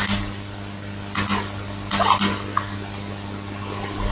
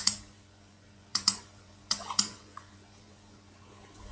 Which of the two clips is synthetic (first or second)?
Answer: second